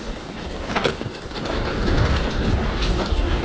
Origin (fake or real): fake